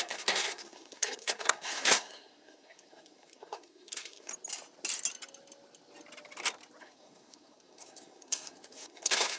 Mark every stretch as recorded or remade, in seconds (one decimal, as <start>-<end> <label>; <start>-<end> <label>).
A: 0.0-4.3 remade; 4.3-6.8 recorded; 6.8-9.4 remade